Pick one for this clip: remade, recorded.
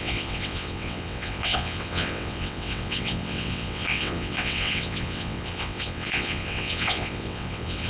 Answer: remade